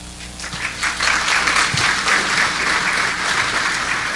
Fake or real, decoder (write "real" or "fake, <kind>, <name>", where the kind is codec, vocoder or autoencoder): real